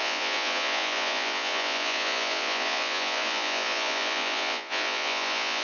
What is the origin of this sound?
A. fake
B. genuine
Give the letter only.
A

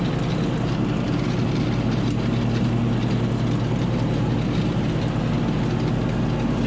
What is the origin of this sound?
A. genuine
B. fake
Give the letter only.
A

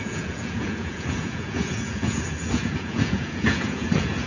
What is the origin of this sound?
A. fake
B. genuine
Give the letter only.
A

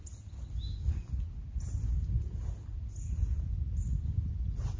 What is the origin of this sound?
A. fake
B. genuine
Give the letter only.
B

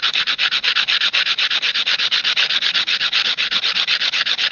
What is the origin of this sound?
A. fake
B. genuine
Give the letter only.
B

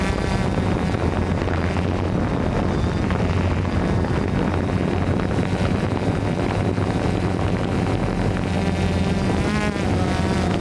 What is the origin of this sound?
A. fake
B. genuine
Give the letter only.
B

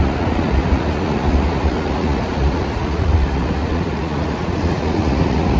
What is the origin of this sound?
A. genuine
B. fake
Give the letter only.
B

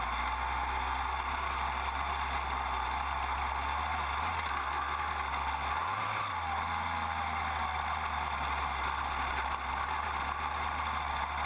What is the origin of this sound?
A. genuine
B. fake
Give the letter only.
A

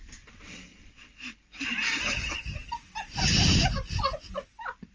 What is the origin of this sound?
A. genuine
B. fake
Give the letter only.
A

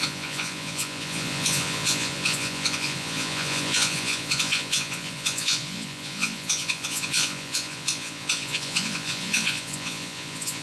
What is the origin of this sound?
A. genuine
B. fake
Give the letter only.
B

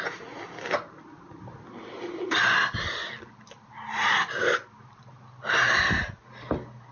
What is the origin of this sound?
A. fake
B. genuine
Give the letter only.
B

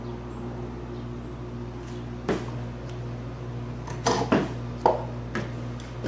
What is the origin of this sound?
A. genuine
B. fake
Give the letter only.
A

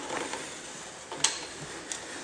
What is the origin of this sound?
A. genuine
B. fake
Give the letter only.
A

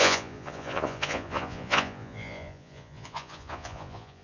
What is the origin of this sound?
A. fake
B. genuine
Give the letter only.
A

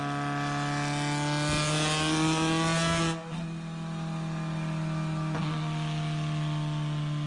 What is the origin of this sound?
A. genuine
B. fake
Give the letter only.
A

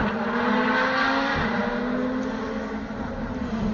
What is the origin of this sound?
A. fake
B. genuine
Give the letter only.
B